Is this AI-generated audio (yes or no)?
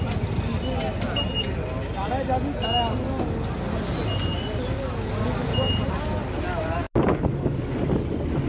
no